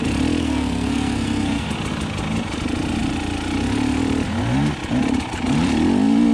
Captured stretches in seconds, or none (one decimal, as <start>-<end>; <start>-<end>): 0.0-0.4; 1.7-6.3